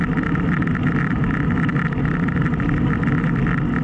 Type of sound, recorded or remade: recorded